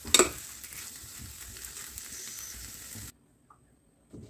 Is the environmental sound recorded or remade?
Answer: recorded